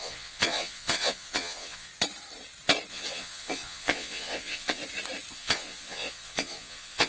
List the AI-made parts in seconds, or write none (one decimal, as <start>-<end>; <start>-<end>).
0.0-1.9; 2.9-4.8; 5.3-7.1